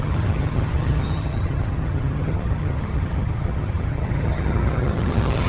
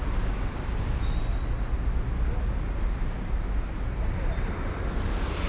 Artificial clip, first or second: first